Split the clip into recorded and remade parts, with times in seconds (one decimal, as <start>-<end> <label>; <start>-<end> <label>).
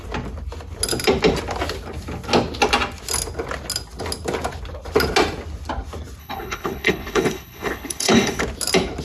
0.0-6.2 recorded; 6.2-8.4 remade; 8.4-9.0 recorded